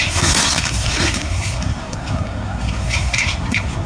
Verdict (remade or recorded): remade